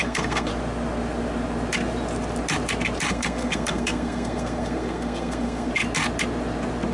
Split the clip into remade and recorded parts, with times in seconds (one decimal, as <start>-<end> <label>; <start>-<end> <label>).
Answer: 0.0-0.5 remade; 0.5-3.1 recorded; 3.1-5.7 remade; 5.7-6.9 recorded